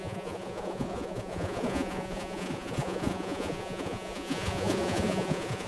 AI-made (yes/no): yes